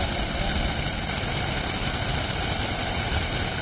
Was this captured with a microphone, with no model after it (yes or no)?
yes